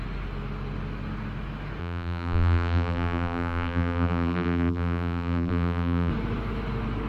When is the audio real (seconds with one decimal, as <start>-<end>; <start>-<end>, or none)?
0.0-1.8; 6.1-7.1